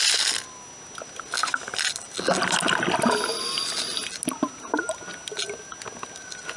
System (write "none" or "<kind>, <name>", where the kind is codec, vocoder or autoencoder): none